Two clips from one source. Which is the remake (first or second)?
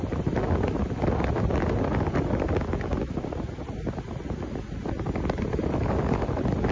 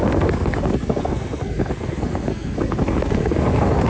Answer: second